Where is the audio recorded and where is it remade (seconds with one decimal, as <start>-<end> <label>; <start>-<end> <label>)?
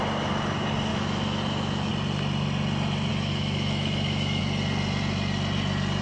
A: 0.0-0.9 recorded; 0.9-1.9 remade; 1.9-3.1 recorded; 3.1-4.4 remade; 4.4-6.0 recorded